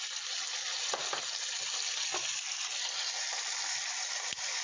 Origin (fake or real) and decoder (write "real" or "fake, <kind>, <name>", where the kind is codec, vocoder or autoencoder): real